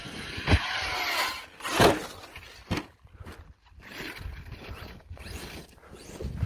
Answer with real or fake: real